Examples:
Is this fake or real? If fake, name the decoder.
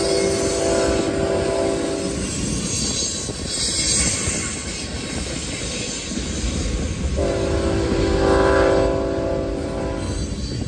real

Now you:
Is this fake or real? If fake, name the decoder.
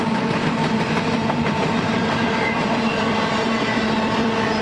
fake, vocoder, BigVGAN v2